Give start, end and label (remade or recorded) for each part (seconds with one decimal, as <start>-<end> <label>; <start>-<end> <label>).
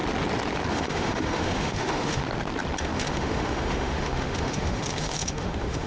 0.0-0.7 recorded; 0.7-2.2 remade; 2.2-2.8 recorded; 2.8-5.9 remade